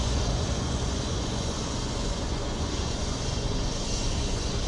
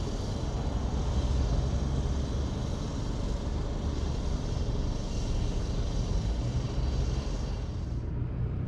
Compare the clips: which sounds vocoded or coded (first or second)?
first